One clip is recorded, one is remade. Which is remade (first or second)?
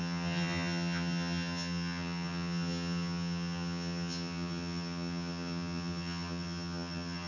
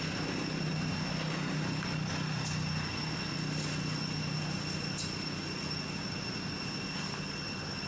first